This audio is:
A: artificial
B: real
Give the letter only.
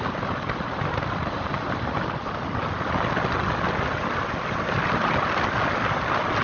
B